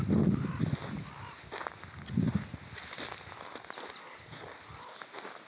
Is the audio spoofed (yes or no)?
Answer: no